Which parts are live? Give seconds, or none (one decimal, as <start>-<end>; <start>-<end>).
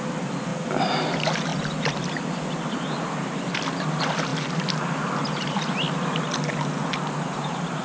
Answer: 0.0-7.8